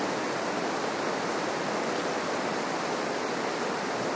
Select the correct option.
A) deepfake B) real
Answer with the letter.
B